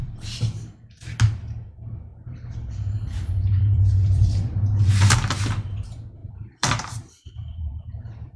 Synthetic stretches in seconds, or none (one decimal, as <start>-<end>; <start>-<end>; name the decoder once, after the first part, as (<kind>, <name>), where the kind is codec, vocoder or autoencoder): 2.1-4.9 (vocoder, BigVGAN v2); 6.2-8.4